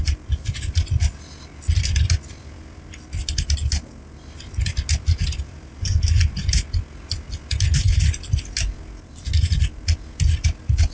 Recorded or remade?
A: recorded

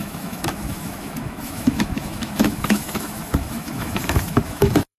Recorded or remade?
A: remade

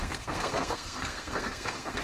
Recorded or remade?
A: remade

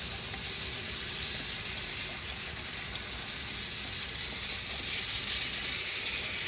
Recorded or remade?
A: recorded